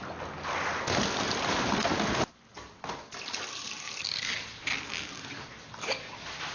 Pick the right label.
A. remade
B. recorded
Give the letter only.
B